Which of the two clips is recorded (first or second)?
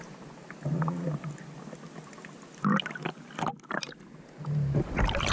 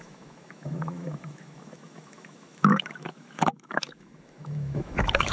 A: first